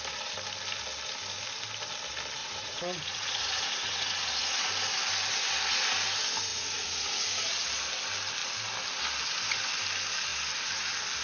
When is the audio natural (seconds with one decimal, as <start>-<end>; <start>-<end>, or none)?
0.0-2.4; 4.7-6.5; 7.5-11.2